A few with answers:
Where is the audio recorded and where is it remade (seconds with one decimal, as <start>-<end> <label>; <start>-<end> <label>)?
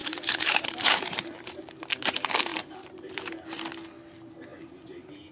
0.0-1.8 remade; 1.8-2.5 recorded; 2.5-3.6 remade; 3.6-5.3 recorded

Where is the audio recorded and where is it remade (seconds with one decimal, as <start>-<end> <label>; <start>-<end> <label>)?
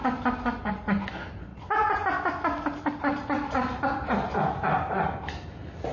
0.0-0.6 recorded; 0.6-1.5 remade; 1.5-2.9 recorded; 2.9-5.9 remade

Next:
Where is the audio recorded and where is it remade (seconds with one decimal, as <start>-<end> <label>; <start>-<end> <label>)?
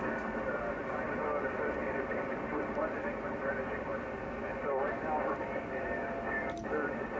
0.0-3.9 remade; 3.9-4.5 recorded; 4.5-7.2 remade